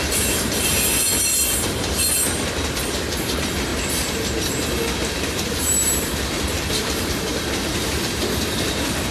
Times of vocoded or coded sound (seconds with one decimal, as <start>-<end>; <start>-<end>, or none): 0.0-1.1; 3.1-3.7; 5.1-7.7